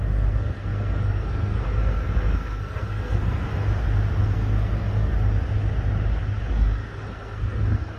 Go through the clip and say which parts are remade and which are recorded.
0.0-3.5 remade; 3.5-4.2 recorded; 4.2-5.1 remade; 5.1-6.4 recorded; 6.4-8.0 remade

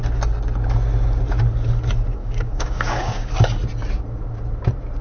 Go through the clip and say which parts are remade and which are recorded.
0.0-2.2 recorded; 2.2-3.3 remade; 3.3-5.0 recorded

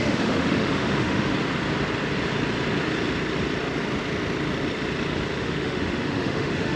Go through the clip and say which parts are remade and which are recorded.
0.0-1.3 remade; 1.3-5.4 recorded; 5.4-6.8 remade

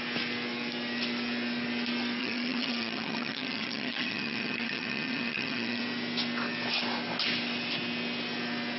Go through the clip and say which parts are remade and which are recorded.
0.0-2.2 recorded; 2.2-5.8 remade; 5.8-8.8 recorded

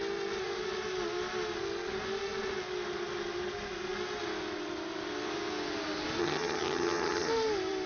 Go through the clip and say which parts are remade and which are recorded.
0.0-6.2 recorded; 6.2-7.3 remade; 7.3-7.9 recorded

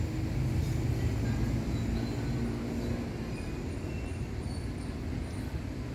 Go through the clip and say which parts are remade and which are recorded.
0.0-4.1 recorded; 4.1-4.6 remade; 4.6-5.9 recorded

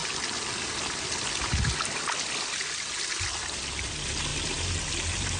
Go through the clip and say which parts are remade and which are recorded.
0.0-5.4 recorded